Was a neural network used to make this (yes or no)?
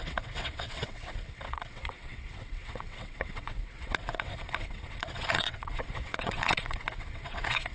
yes